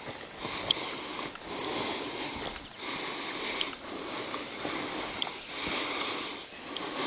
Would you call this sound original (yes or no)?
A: yes